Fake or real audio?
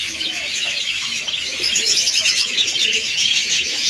fake